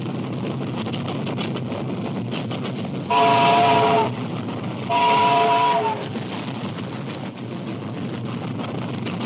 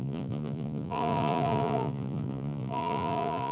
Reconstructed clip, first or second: second